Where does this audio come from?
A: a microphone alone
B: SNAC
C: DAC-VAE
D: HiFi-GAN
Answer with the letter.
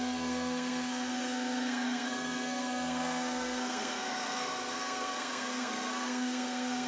B